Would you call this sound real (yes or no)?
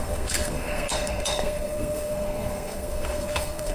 no